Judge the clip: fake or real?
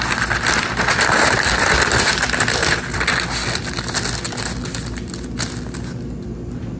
real